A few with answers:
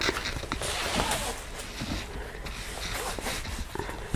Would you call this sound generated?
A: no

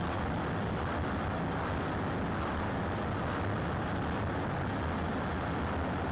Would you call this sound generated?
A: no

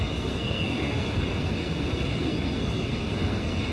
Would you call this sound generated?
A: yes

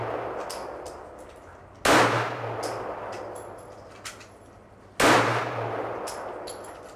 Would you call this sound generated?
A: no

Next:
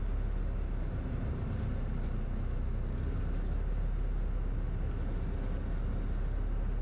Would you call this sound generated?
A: no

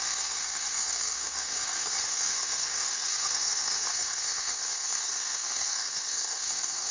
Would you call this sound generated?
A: yes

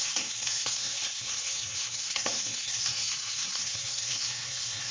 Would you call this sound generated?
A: yes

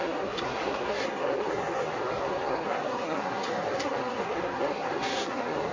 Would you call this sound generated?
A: yes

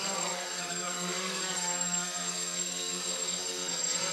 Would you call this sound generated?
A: yes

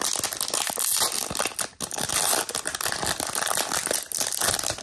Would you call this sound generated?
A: no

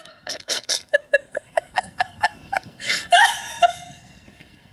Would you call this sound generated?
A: yes